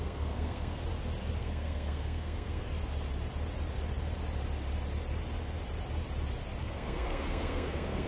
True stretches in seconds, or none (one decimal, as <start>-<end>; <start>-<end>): 0.8-1.4; 2.6-6.6